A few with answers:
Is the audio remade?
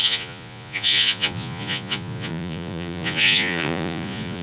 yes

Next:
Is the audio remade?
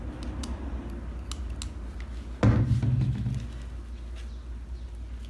no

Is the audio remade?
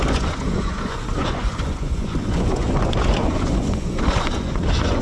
yes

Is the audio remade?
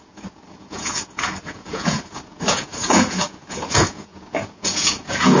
yes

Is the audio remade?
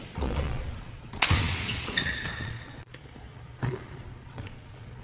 yes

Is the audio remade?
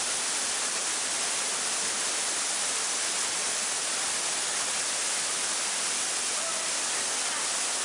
no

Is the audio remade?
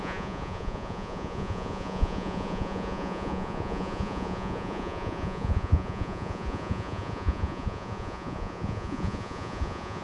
yes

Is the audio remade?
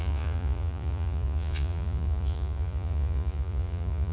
yes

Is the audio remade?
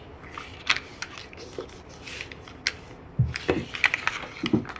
no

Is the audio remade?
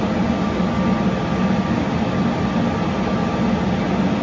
no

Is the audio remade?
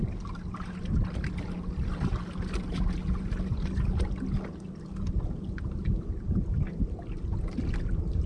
no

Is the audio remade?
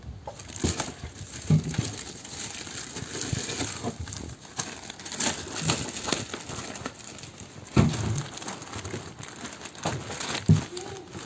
no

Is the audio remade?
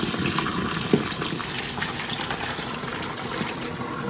no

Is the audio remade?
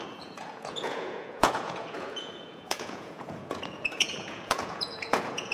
yes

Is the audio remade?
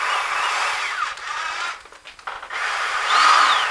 no